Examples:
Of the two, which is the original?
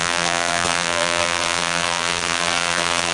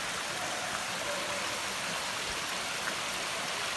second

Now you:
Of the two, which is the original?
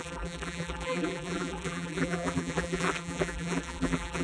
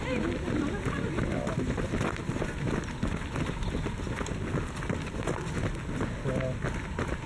second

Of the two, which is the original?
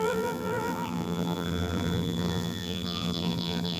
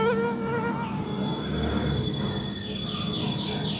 second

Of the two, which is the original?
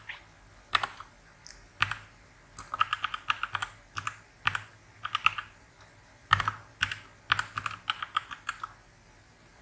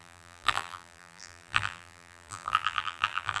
first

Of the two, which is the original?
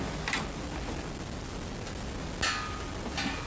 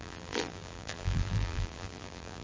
first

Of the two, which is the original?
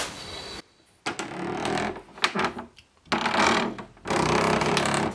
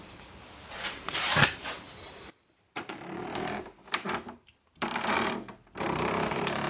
first